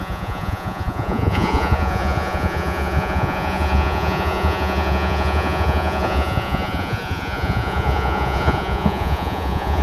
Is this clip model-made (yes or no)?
yes